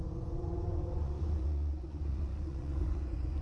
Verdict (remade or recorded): remade